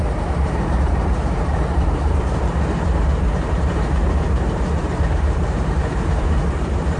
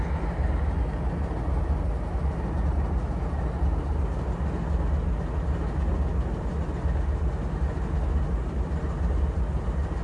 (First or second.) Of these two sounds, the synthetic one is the first